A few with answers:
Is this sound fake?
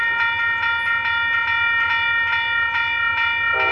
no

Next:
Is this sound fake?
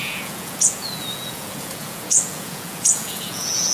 yes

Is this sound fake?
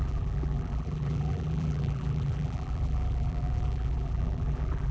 yes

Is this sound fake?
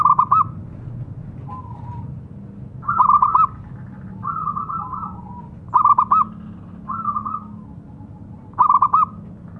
no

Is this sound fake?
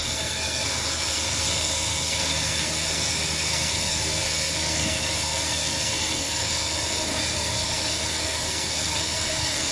yes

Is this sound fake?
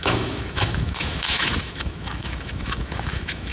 yes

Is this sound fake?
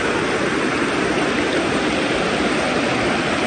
no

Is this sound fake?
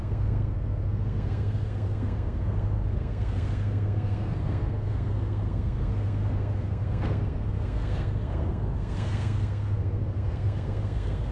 yes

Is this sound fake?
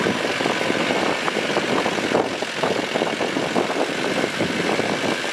no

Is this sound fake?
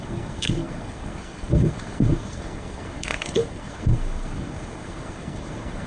yes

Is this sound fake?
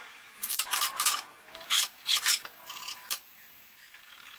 yes